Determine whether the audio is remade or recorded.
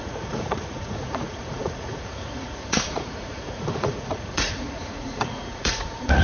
remade